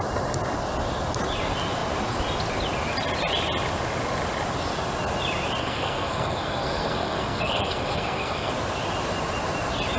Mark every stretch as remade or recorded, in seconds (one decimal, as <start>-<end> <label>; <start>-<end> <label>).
0.0-5.6 recorded; 5.6-8.5 remade; 8.5-10.0 recorded